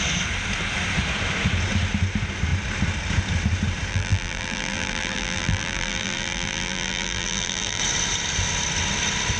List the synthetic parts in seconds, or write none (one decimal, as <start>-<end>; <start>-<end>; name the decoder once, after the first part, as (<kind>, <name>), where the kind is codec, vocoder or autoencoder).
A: 3.9-7.8 (vocoder, BigVGAN v2)